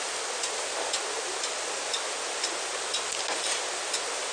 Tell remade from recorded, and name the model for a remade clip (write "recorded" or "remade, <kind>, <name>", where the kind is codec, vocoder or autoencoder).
recorded